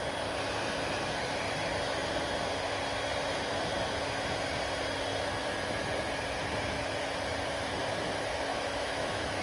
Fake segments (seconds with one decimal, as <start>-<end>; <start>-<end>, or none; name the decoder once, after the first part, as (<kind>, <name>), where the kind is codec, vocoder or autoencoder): 8.5-9.4 (autoencoder, DAC-VAE)